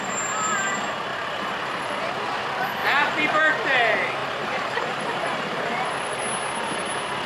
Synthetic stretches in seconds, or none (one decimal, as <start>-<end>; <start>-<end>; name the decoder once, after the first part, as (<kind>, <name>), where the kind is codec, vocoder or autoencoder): 1.1-2.0 (vocoder, BigVGAN v2); 2.8-3.4; 4.2-6.2